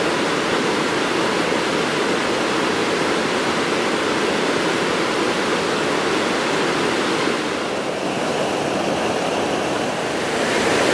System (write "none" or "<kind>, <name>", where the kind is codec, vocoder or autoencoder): none